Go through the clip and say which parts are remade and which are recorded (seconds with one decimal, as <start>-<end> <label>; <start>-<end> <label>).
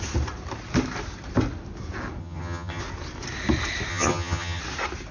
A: 0.0-2.2 recorded; 2.2-2.8 remade; 2.8-3.9 recorded; 3.9-4.6 remade; 4.6-5.1 recorded